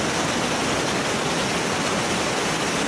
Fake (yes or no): no